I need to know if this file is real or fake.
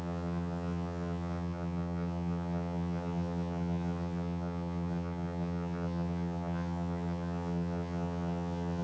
fake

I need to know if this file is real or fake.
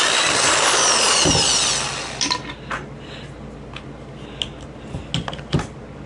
real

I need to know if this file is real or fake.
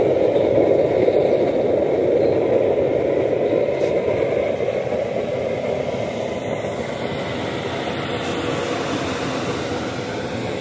real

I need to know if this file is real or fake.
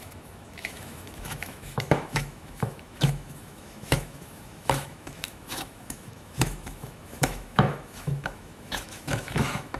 fake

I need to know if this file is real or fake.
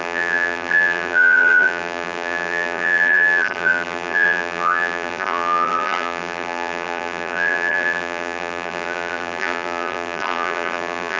fake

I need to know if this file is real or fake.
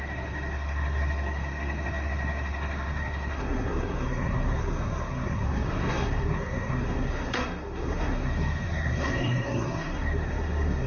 fake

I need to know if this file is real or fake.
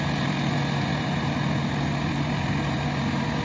real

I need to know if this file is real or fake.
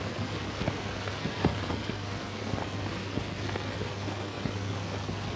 fake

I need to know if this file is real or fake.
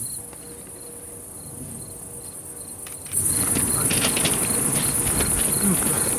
real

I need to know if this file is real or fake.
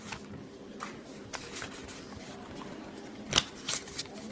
real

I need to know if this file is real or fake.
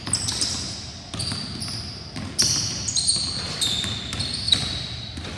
real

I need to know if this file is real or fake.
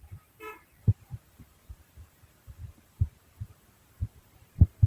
fake